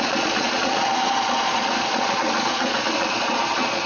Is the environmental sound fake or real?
fake